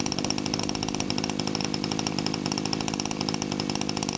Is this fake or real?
real